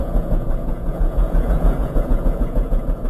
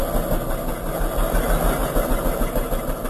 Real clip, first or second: second